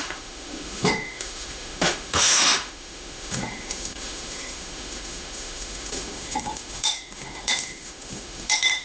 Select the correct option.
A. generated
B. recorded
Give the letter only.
A